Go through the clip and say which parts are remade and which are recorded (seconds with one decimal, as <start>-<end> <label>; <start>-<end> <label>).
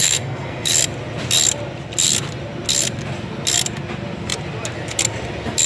0.0-0.7 remade; 0.7-5.7 recorded